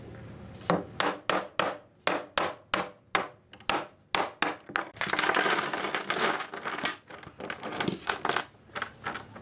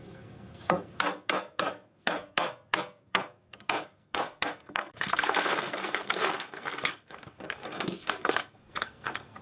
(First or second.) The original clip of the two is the first